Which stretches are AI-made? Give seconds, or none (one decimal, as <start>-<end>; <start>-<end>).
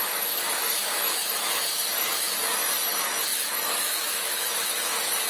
0.0-2.4; 2.9-5.3